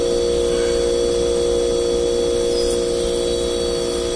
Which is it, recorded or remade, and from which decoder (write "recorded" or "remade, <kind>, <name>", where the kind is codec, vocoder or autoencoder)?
recorded